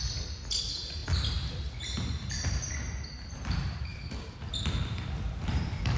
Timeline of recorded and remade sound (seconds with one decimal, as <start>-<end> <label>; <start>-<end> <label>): 0.0-1.0 remade; 1.0-3.3 recorded; 3.3-6.0 remade